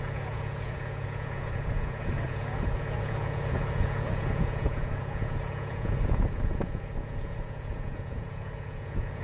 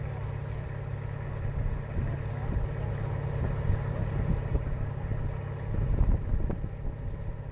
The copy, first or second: first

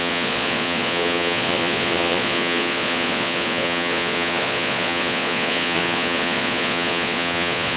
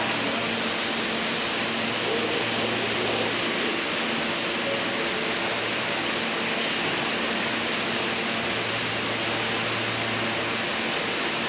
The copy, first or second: first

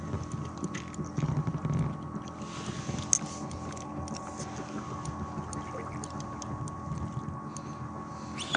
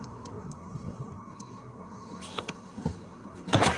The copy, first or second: second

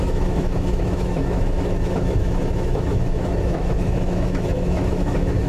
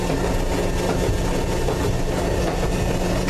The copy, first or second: first